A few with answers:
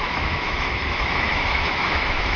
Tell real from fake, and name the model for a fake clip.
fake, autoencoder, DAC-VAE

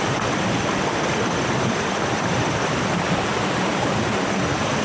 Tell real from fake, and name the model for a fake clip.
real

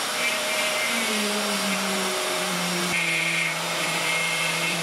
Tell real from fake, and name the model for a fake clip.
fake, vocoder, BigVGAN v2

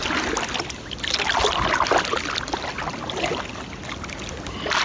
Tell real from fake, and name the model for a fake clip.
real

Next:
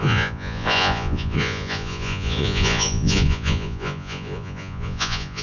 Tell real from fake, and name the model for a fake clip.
fake, vocoder, Vocos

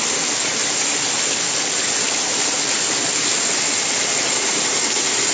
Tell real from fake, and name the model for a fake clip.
real